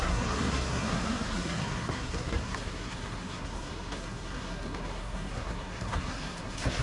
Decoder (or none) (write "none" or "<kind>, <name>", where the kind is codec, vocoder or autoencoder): codec, SNAC